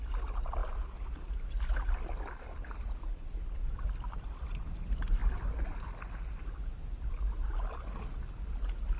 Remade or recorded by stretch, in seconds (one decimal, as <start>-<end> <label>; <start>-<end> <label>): 0.0-5.2 remade; 5.2-9.0 recorded